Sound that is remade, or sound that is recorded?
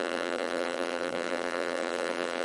remade